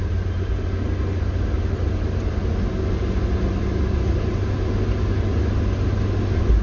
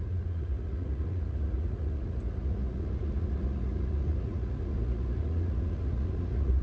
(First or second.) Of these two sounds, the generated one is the second